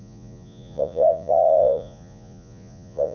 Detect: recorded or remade remade